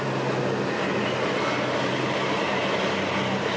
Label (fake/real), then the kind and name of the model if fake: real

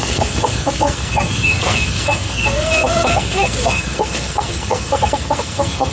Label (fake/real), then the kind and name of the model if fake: fake, codec, SNAC